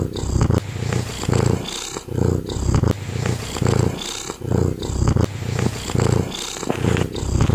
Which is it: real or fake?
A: real